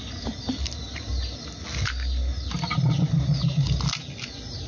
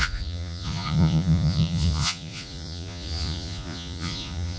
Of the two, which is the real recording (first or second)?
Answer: first